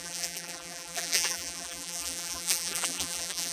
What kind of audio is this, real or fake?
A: fake